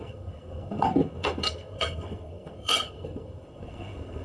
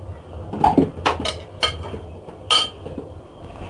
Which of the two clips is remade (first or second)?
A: first